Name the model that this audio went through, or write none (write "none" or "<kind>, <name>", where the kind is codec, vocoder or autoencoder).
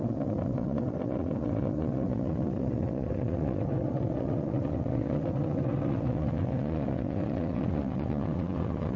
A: vocoder, WaveNeXt